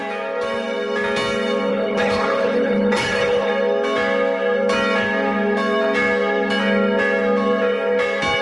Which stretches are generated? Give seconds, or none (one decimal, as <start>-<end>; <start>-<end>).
1.7-3.5

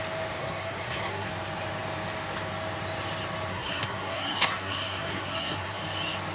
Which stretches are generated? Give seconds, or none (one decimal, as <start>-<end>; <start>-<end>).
0.4-1.3; 3.5-5.8

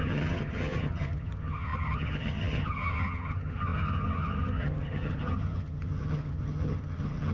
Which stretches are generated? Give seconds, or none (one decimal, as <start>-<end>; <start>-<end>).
0.0-7.3

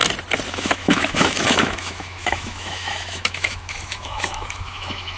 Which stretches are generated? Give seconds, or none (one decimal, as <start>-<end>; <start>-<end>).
0.5-5.2

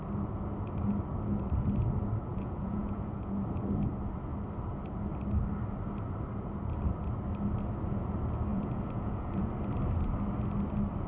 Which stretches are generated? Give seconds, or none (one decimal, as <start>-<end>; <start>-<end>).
2.3-3.4; 8.5-9.5

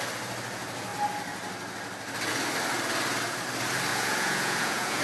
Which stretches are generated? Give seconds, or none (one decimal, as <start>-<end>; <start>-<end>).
3.9-5.0